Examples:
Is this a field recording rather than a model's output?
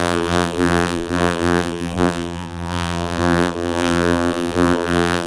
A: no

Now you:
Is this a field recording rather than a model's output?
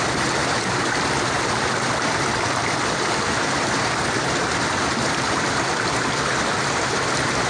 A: yes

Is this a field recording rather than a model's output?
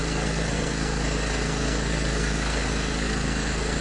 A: no